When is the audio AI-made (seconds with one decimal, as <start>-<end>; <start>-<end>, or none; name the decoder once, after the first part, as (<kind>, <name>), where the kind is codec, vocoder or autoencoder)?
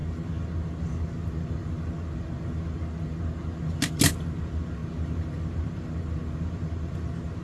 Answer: none